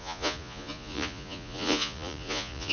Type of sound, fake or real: fake